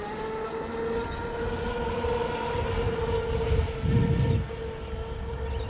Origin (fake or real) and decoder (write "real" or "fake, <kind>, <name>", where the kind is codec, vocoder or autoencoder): real